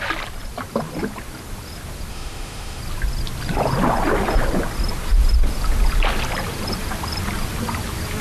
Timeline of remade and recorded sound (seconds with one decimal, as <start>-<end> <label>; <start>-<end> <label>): 0.0-2.1 recorded; 2.1-2.8 remade; 2.8-8.2 recorded